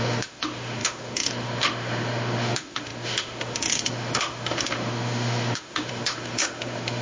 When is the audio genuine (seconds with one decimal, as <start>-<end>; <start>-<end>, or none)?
none